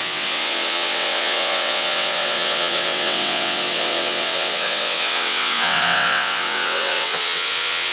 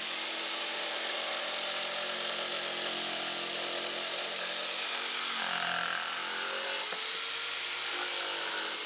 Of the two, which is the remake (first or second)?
first